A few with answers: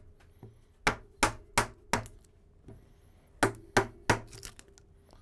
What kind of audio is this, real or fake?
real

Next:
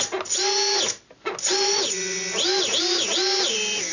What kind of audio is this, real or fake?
real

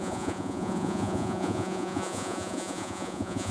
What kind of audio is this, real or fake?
fake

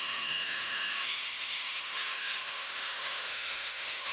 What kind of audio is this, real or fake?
fake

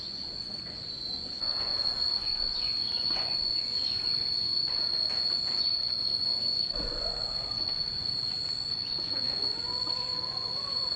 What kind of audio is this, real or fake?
fake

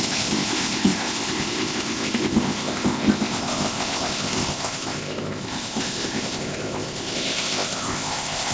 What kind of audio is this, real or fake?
fake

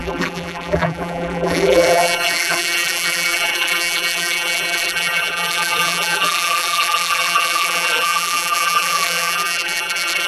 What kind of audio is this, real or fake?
fake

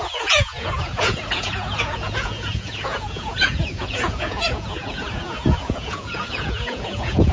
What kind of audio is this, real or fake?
fake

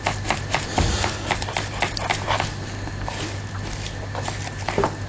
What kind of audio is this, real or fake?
real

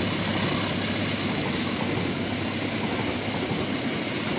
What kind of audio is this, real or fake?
real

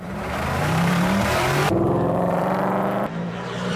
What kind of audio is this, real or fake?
fake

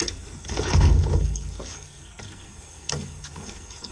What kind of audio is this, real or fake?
fake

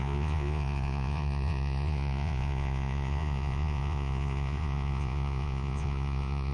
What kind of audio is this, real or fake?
fake